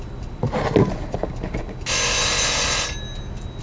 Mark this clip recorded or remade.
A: recorded